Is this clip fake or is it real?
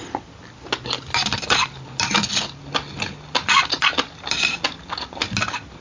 real